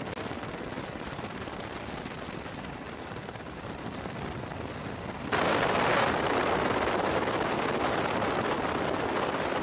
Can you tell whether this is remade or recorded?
recorded